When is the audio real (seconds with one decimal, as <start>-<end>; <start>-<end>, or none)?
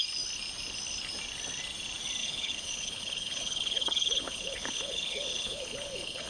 0.0-2.2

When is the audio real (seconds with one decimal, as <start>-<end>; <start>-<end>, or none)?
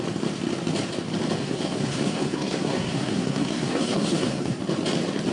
0.0-1.4; 4.6-5.3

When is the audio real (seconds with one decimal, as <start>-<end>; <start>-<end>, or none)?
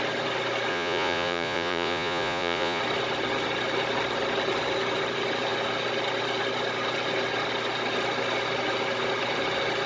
0.0-0.7; 2.8-9.9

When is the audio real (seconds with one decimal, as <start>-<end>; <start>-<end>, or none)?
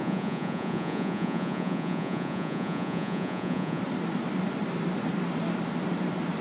3.8-6.4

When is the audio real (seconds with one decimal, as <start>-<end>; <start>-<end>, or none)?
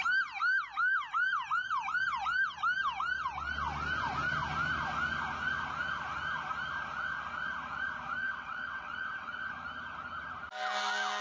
0.0-8.2; 9.5-11.2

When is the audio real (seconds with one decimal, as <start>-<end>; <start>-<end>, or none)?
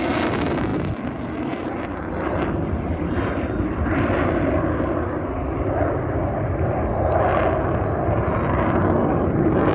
0.0-0.7; 4.5-9.7